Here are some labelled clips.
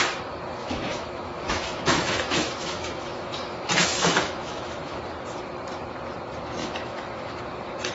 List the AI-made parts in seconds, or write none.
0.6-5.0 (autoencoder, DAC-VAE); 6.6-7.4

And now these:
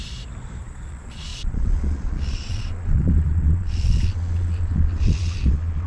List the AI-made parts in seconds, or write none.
0.6-5.9 (vocoder, Vocos)

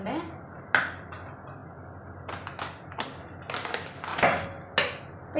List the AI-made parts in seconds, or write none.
none

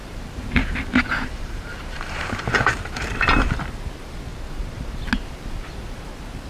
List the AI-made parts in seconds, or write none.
0.0-3.1 (vocoder, BigVGAN v2); 4.3-5.0

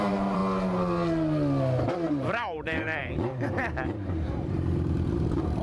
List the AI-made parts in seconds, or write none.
0.0-0.4 (vocoder, BigVGAN v2); 1.9-5.6